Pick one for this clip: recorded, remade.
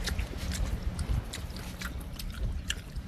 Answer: recorded